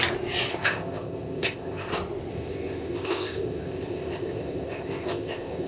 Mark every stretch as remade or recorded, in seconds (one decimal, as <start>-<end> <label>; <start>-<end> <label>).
0.0-0.5 recorded; 0.5-1.9 remade; 1.9-2.3 recorded; 2.3-5.7 remade